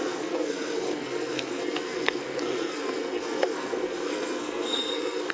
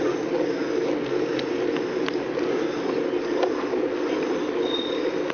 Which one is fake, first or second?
first